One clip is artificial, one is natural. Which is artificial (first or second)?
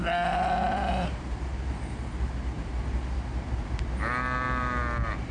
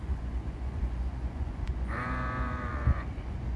second